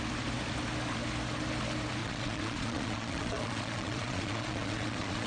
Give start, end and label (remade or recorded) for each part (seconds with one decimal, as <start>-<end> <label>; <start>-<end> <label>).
0.0-2.0 recorded; 2.0-5.3 remade